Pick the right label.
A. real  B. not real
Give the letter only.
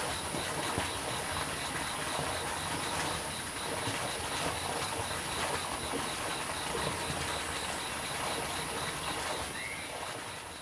A